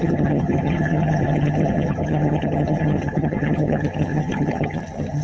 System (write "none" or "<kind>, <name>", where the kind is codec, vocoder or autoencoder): vocoder, HiFi-GAN